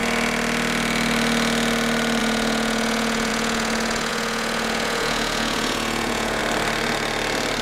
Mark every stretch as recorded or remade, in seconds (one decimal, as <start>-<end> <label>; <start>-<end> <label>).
0.0-2.2 recorded; 2.2-6.4 remade; 6.4-7.6 recorded